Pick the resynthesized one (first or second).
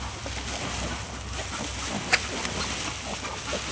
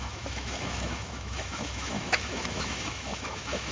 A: second